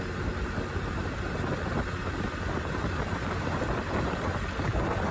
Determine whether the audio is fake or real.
real